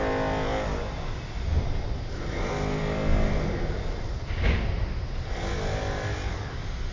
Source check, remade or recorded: recorded